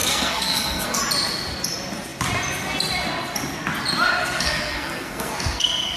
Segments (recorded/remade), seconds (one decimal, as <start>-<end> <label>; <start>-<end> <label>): 0.0-1.0 remade; 1.0-4.2 recorded; 4.2-6.0 remade